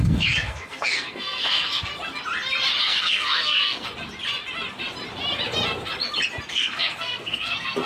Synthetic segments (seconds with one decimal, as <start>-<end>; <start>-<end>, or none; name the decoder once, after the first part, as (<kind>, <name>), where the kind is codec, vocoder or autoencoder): 0.0-1.9 (codec, SNAC); 2.8-3.9; 6.5-7.9